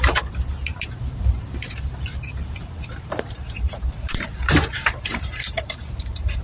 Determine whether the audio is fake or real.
fake